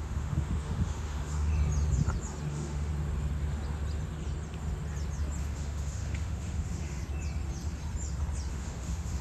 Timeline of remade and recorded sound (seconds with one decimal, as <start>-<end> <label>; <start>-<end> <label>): 0.0-1.5 remade; 1.5-2.5 recorded; 2.5-2.9 remade; 2.9-5.4 recorded; 5.4-7.0 remade; 7.0-8.5 recorded; 8.5-9.2 remade